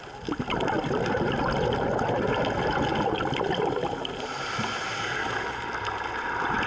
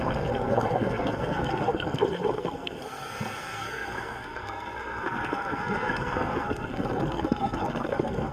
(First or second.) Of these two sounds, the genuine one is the first